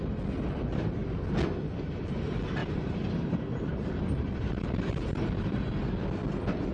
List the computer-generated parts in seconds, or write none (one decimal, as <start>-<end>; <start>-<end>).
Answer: 2.6-5.8